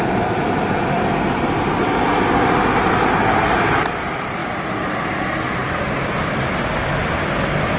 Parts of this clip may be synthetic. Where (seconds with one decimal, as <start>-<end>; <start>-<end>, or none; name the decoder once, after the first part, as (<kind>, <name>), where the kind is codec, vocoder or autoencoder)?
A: none